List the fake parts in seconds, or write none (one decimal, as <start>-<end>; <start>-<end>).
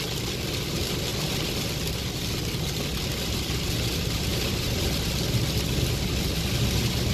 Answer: none